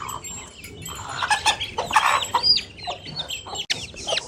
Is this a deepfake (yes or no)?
no